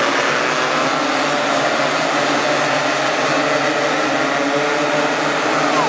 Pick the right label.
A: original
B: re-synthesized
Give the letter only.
A